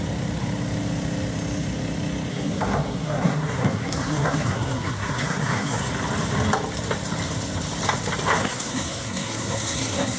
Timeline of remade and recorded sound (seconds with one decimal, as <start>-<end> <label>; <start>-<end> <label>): 0.0-2.3 recorded; 2.3-5.9 remade; 5.9-8.4 recorded; 8.4-10.2 remade